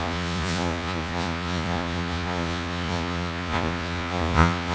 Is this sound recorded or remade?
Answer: remade